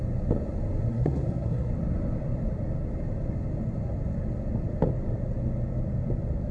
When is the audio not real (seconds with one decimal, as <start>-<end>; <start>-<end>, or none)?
0.9-1.7